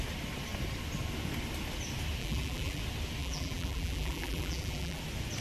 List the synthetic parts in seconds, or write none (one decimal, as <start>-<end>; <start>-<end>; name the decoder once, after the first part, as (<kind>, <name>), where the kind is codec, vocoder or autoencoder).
2.2-2.8 (vocoder, BigVGAN v2); 3.2-5.0